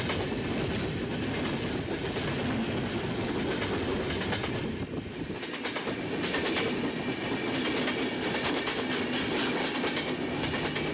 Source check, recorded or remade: recorded